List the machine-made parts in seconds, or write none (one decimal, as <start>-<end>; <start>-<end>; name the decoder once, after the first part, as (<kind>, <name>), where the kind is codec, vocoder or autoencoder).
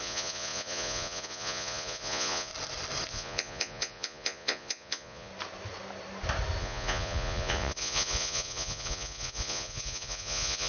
0.0-2.5 (vocoder, Vocos); 3.1-5.3; 6.6-10.7